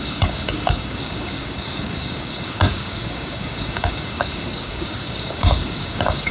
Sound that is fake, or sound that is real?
fake